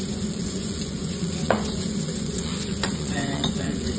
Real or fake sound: fake